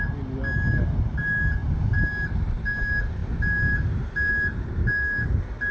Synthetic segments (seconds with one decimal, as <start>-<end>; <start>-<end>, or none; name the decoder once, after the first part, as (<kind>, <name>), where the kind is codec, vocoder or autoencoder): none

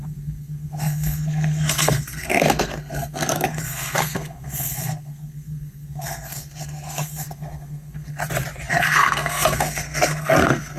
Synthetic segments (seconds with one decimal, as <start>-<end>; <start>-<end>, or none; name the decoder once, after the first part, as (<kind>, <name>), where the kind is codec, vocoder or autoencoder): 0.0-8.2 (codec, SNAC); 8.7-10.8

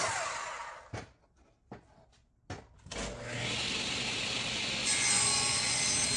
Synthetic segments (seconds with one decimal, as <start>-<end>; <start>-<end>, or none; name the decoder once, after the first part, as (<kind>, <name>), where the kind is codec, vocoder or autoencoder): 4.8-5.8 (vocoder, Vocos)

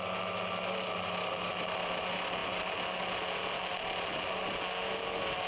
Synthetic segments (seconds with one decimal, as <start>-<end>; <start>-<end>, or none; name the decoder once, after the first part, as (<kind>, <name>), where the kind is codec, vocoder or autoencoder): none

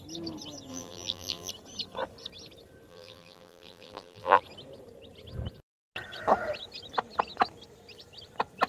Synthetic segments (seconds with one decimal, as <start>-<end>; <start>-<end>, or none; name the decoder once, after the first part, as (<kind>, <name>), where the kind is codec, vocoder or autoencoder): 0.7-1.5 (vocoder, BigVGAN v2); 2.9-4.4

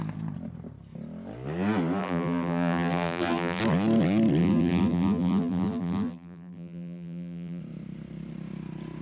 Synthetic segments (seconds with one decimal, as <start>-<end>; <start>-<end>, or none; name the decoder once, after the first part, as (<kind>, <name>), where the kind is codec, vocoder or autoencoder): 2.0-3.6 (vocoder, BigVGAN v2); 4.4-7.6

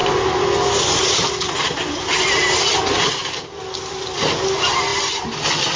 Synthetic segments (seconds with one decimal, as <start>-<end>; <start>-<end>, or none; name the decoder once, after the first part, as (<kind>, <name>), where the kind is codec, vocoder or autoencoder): none